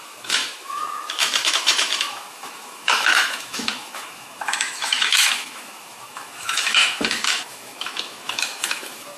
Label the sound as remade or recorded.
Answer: remade